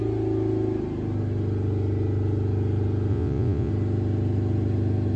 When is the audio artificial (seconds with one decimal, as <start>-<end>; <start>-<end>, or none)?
3.1-3.7